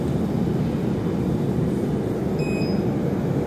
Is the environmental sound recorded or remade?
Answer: recorded